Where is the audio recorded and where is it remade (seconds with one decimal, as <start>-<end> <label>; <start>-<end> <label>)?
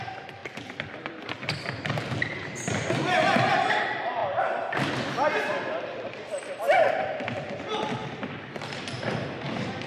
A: 0.0-0.4 recorded; 0.4-1.6 remade; 1.6-4.2 recorded; 4.2-4.9 remade; 4.9-8.0 recorded; 8.0-8.8 remade; 8.8-9.9 recorded